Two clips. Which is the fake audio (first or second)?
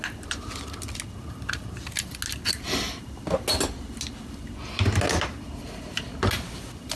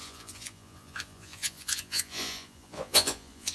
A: second